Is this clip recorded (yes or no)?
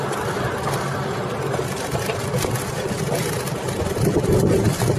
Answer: yes